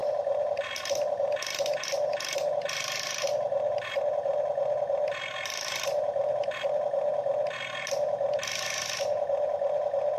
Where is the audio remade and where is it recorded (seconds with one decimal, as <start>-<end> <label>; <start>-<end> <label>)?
0.0-10.2 recorded